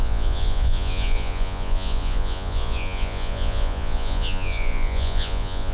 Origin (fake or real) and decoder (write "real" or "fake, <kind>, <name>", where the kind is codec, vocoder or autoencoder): fake, vocoder, Vocos